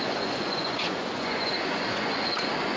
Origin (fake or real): fake